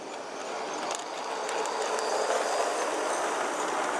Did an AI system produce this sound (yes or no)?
no